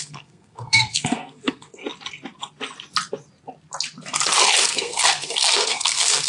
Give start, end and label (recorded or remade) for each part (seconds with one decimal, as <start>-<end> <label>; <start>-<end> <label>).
0.0-1.8 remade; 1.8-4.6 recorded; 4.6-6.3 remade